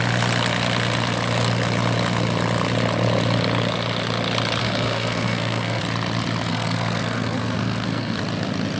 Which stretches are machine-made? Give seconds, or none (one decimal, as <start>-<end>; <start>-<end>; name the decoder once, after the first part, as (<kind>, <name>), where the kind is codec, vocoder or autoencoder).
4.6-5.8 (codec, SNAC); 6.5-8.2